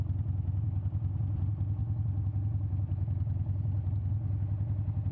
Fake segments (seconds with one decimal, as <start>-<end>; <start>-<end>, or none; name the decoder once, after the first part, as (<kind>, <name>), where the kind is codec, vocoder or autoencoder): none